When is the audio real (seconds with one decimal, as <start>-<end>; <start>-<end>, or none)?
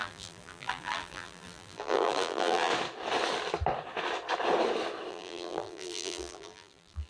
2.7-5.1